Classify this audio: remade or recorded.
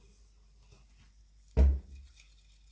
recorded